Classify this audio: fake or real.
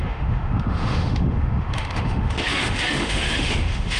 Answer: fake